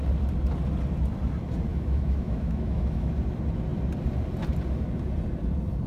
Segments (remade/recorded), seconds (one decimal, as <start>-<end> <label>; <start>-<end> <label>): 0.0-1.7 recorded; 1.7-3.1 remade; 3.1-5.9 recorded